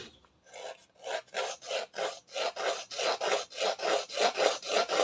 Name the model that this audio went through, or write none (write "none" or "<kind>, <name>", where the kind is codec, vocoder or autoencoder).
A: none